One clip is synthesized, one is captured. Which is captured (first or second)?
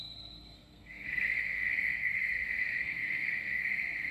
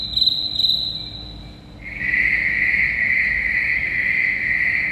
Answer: second